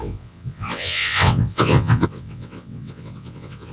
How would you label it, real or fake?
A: fake